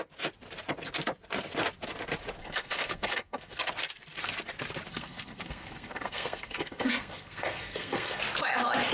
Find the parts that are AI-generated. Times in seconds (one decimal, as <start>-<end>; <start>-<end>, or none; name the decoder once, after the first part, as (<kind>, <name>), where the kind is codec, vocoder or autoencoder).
2.4-3.7 (codec, SNAC); 4.9-8.2